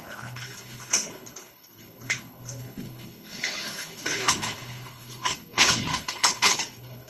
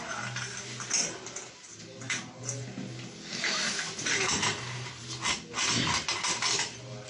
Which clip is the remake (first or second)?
first